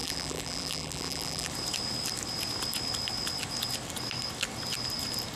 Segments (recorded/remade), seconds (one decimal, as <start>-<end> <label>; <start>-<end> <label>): 0.0-1.5 remade; 1.5-5.4 recorded